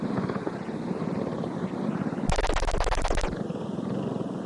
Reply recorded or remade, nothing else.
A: recorded